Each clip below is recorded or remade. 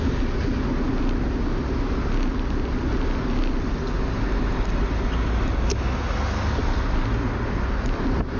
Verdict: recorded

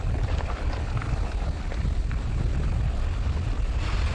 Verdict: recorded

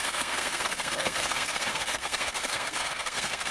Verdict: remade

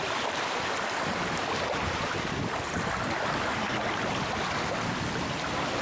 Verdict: recorded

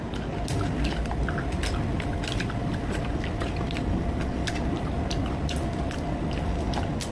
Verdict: recorded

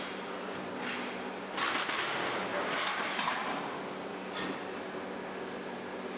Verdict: recorded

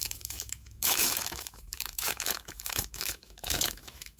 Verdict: remade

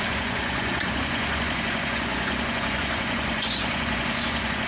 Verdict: remade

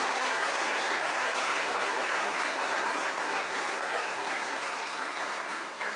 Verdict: remade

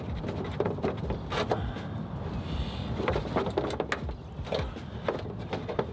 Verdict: recorded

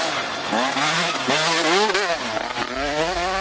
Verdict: recorded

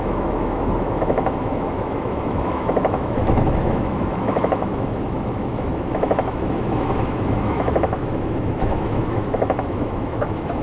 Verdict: remade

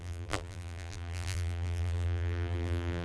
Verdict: remade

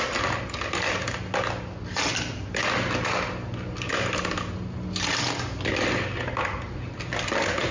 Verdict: recorded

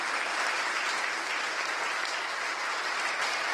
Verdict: recorded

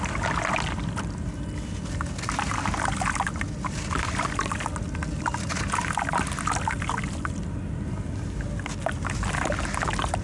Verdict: recorded